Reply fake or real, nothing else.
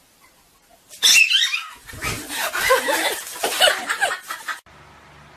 real